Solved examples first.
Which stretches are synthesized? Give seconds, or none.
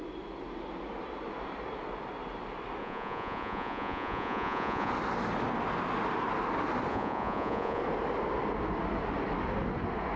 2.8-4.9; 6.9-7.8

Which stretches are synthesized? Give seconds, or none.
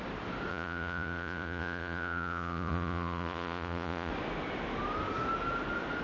0.5-4.1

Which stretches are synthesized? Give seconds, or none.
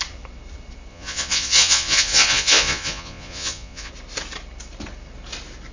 0.9-3.9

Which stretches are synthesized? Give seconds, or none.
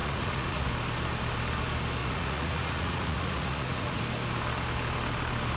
0.0-0.7; 2.0-4.0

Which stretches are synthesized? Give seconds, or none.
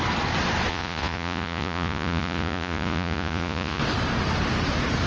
0.7-3.8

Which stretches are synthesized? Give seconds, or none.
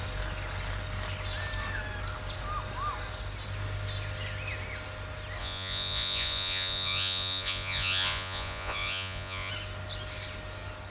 5.4-9.5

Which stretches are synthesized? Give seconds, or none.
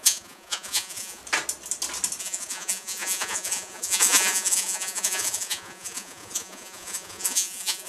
0.0-1.2; 2.2-7.9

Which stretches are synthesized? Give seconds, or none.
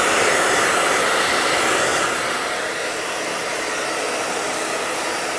none